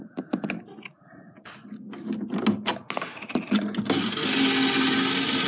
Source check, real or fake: real